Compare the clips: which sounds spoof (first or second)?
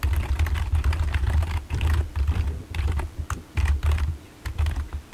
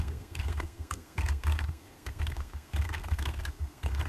second